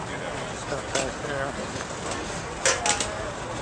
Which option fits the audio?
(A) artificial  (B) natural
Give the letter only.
B